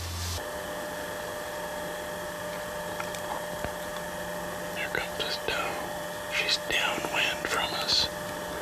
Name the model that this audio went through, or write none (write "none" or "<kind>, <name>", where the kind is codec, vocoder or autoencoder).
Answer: none